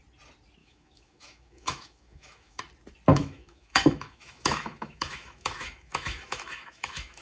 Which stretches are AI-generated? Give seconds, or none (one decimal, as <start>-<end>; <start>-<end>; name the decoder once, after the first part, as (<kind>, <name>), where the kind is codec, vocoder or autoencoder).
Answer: 0.6-2.6 (autoencoder, DAC-VAE); 3.1-7.2